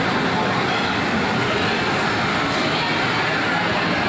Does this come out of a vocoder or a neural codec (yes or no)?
no